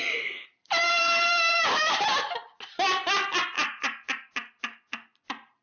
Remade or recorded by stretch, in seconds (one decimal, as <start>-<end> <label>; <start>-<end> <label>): 0.0-2.4 remade; 2.4-5.6 recorded